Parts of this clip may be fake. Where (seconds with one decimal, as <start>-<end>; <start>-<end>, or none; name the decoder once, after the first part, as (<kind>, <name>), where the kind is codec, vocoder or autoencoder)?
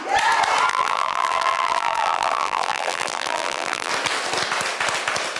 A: 0.7-3.9 (vocoder, BigVGAN v2)